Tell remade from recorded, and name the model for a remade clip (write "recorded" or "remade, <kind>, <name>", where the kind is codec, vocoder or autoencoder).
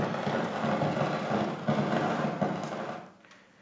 recorded